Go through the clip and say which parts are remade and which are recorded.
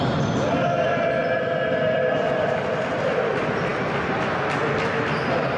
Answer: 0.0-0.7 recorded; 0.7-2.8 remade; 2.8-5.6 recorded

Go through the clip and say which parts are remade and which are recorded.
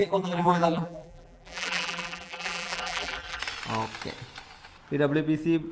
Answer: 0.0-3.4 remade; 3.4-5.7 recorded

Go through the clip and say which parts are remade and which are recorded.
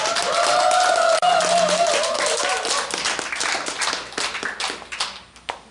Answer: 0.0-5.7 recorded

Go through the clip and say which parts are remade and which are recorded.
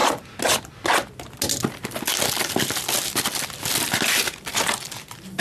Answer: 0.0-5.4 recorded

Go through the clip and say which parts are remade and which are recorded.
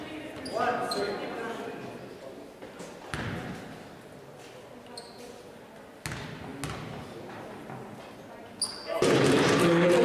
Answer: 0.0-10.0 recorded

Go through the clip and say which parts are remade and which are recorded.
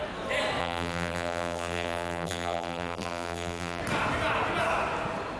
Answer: 0.0-0.6 recorded; 0.6-3.8 remade; 3.8-5.4 recorded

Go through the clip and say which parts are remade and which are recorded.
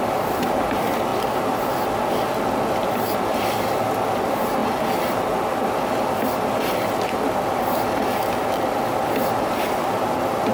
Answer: 0.0-10.5 recorded